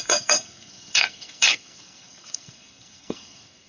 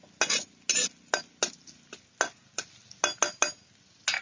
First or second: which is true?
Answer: second